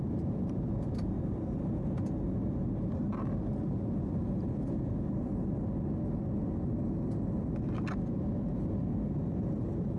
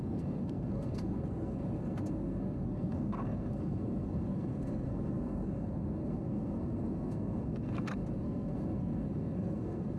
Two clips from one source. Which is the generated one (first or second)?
second